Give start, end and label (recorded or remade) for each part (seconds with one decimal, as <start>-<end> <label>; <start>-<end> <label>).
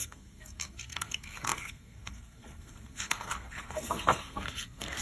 0.0-5.0 remade